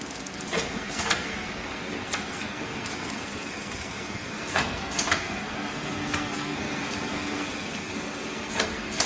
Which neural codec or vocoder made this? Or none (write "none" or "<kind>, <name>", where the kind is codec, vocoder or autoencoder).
codec, SNAC